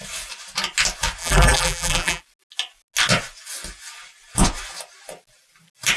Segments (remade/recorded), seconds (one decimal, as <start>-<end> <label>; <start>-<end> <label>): 0.0-1.2 recorded; 1.2-2.2 remade; 2.2-6.0 recorded